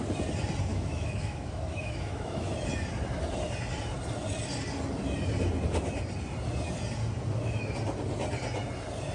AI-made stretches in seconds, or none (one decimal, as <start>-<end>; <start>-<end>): 0.7-2.5